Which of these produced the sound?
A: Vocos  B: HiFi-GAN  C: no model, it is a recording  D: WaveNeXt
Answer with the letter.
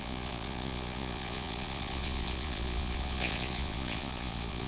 A